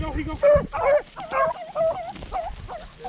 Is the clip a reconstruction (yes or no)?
no